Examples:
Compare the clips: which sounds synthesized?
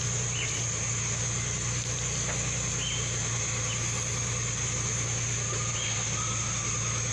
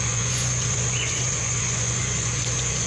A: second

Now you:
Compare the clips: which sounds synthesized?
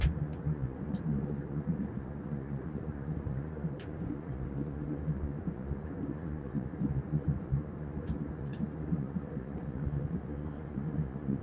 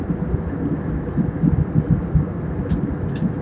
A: first